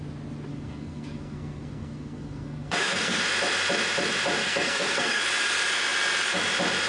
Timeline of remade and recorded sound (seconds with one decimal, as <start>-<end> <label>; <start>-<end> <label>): 0.0-0.5 recorded; 0.5-3.2 remade; 3.2-4.4 recorded; 4.4-5.2 remade; 5.2-6.9 recorded